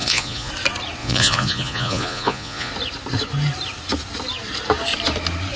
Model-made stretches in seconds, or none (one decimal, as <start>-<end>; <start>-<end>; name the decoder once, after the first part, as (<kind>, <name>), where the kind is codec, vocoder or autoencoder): 0.0-0.5 (vocoder, Vocos); 1.0-2.7